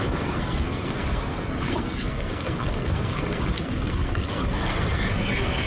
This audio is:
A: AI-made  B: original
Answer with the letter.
A